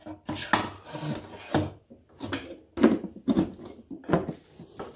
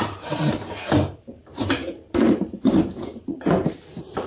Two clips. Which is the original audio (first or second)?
first